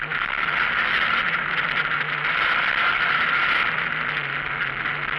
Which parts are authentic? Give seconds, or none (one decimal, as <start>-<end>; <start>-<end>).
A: 0.0-5.2